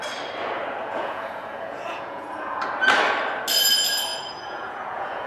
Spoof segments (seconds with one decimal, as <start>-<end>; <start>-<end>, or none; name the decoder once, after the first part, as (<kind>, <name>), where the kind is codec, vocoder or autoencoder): 0.8-2.6 (vocoder, Vocos); 4.1-5.3

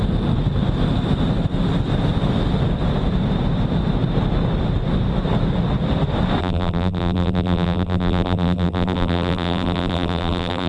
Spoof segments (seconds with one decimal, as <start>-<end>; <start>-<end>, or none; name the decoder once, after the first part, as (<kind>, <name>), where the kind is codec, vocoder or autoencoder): 6.4-10.7 (vocoder, BigVGAN v2)

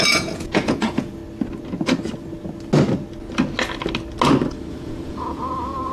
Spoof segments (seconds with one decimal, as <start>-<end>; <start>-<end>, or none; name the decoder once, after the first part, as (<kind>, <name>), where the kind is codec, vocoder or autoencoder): 0.0-1.2 (vocoder, Vocos); 4.7-5.9

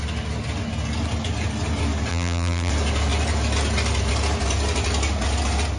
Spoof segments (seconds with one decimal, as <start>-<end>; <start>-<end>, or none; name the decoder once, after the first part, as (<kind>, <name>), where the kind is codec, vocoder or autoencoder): 2.1-2.7 (vocoder, BigVGAN v2)